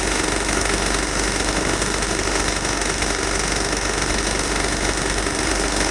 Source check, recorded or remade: remade